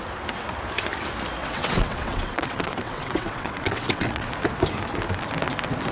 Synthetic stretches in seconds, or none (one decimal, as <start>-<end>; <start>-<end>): 1.4-4.3